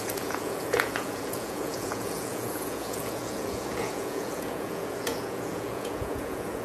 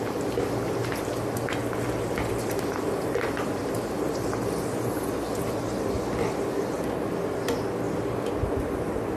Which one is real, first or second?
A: second